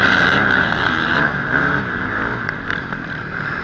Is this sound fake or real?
fake